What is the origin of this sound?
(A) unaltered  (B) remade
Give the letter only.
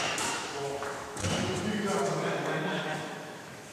B